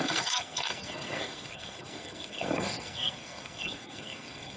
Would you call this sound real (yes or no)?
no